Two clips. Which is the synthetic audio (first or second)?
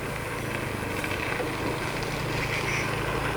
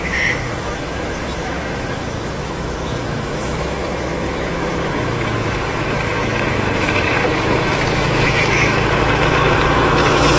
second